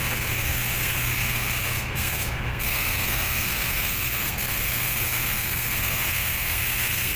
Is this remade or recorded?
remade